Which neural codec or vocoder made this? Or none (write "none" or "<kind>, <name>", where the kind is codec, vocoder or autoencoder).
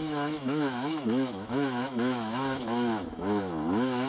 autoencoder, DAC-VAE